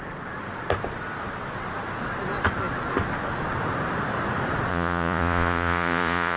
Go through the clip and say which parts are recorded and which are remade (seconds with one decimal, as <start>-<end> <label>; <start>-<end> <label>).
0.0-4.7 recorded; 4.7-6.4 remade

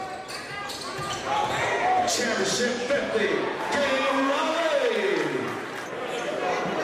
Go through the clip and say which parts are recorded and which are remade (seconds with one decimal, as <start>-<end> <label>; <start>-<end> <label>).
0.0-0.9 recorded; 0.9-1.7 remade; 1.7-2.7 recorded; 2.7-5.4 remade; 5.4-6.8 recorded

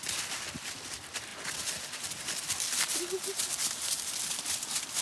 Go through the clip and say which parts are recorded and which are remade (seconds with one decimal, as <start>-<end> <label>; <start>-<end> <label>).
0.0-5.0 recorded

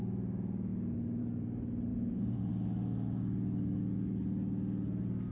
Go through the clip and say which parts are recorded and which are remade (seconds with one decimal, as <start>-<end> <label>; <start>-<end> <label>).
0.0-1.9 recorded; 1.9-2.5 remade; 2.5-5.3 recorded

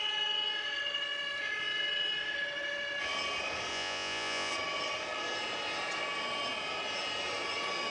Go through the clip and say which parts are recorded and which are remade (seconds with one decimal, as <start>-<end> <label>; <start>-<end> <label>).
0.0-3.7 recorded; 3.7-4.5 remade; 4.5-7.9 recorded

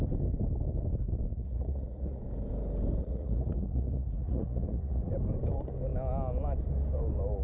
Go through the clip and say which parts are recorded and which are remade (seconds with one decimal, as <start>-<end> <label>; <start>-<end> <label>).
0.0-1.3 recorded; 1.3-2.2 remade; 2.2-3.0 recorded; 3.0-5.1 remade; 5.1-7.4 recorded

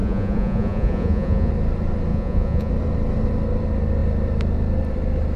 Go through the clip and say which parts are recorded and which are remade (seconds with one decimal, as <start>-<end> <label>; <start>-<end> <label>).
0.0-1.5 remade; 1.5-2.1 recorded; 2.1-2.7 remade; 2.7-5.4 recorded